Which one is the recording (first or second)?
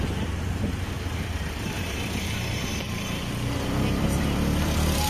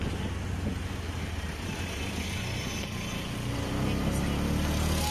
second